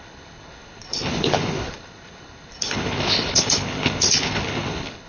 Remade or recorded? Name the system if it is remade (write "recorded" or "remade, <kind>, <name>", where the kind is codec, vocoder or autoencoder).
remade, codec, HILCodec